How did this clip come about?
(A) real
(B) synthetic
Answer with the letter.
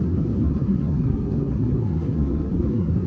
B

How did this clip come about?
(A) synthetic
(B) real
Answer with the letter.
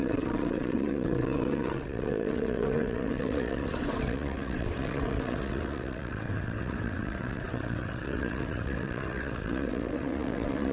A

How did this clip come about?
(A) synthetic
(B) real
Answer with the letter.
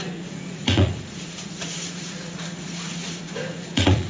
A